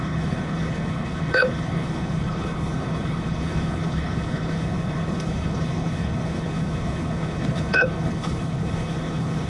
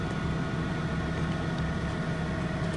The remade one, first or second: first